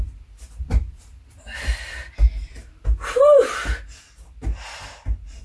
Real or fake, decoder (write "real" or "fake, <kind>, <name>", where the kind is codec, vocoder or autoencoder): real